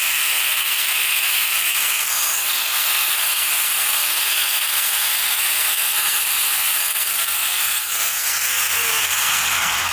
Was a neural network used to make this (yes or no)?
yes